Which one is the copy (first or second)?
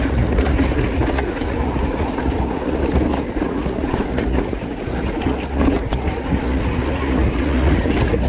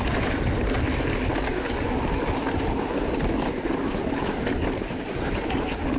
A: first